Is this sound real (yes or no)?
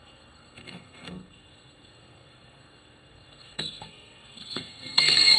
no